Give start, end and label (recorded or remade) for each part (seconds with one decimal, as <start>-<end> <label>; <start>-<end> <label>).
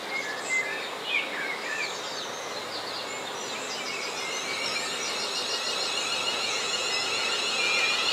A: 0.0-6.3 recorded; 6.3-8.1 remade